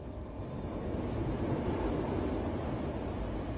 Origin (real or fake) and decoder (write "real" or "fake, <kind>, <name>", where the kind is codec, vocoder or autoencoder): real